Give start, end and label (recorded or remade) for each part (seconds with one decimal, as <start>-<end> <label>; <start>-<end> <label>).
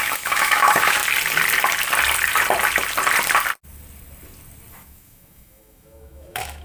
0.0-1.0 remade; 1.0-4.7 recorded; 4.7-6.6 remade